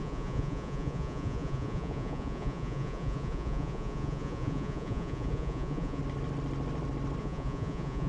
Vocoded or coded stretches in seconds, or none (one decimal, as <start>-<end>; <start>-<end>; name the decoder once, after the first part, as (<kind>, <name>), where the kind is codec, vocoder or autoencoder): 0.0-6.0 (vocoder, Vocos); 7.2-8.1